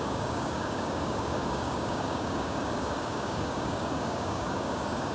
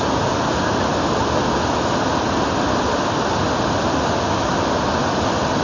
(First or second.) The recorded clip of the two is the second